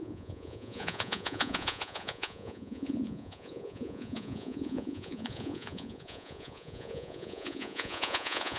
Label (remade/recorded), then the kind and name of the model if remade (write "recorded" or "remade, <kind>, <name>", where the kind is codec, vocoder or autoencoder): remade, vocoder, Vocos